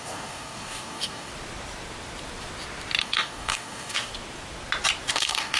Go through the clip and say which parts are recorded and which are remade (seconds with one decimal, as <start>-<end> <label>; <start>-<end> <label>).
0.0-1.3 remade; 1.3-3.0 recorded; 3.0-4.1 remade; 4.1-5.1 recorded; 5.1-5.6 remade